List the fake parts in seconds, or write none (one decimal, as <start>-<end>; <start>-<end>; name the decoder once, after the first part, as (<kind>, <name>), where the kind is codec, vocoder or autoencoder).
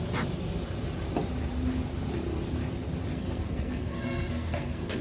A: 3.1-5.0 (codec, SNAC)